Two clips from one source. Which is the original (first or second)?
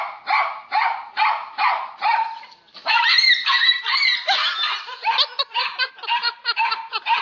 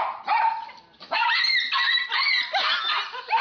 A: second